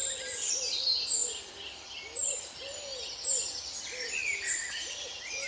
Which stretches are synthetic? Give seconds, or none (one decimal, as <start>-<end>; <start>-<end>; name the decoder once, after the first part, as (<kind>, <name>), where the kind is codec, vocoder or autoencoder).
0.0-0.5 (vocoder, BigVGAN v2); 1.2-4.5